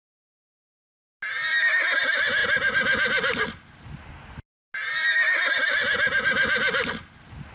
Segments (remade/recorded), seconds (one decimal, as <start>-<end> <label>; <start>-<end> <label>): 0.0-7.5 recorded